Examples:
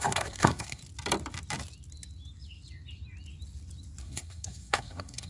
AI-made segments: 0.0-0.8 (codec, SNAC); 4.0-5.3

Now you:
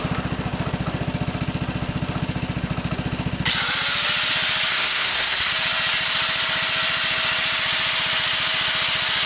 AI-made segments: 4.7-5.5 (codec, SNAC)

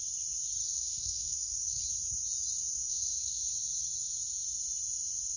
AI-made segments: 0.6-1.8 (codec, SNAC); 2.8-3.4

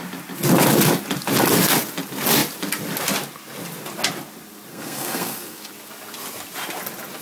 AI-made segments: 4.7-5.7 (codec, SNAC)

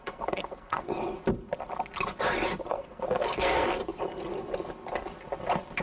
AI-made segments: 0.0-0.9 (codec, SNAC); 2.7-3.8

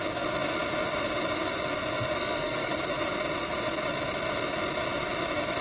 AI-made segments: 2.2-2.7 (codec, SNAC)

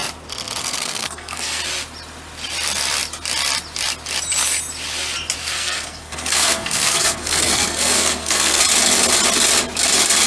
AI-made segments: 0.6-1.6 (codec, SNAC); 5.4-8.6

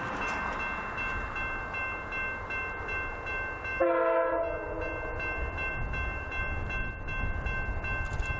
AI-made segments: none